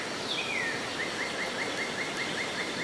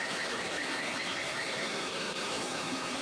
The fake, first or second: second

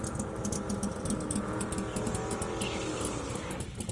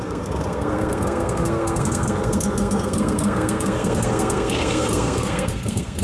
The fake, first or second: second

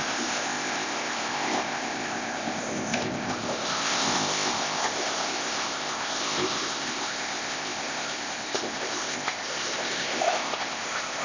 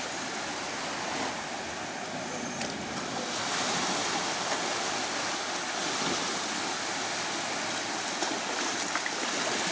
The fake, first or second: first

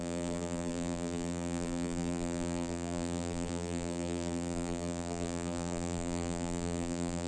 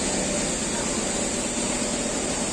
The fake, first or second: first